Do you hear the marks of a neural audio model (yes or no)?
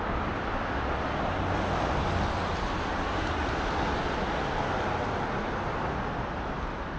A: no